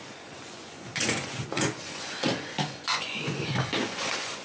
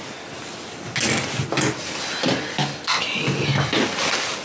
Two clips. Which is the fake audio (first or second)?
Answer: first